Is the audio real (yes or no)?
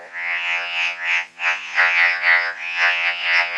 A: no